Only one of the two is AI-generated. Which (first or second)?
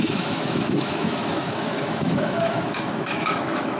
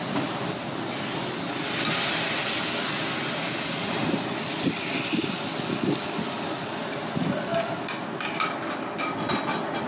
first